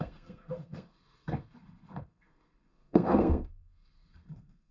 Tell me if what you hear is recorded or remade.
remade